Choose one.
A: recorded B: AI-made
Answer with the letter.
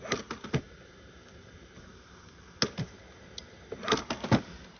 A